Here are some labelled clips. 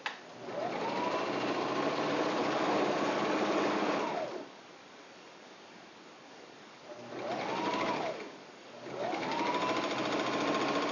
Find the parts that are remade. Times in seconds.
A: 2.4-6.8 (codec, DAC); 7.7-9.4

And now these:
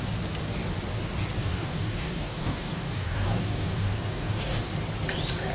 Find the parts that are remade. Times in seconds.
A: 1.4-4.7 (codec, DAC)

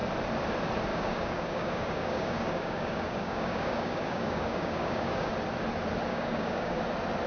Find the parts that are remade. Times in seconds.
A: 0.9-5.3 (codec, DAC); 6.1-6.8

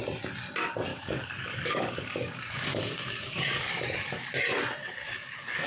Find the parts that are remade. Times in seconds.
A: 0.9-4.3 (codec, DAC); 4.8-5.7

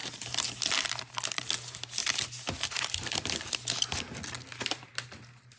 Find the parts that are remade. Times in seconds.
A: none

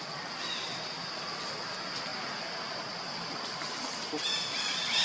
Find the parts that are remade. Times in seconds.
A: none

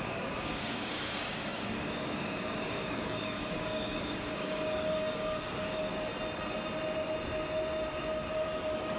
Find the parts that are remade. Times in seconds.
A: 0.0-6.1 (codec, DAC); 8.3-9.0

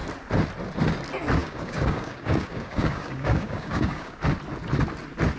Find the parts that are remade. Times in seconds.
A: 1.4-4.2 (codec, DAC)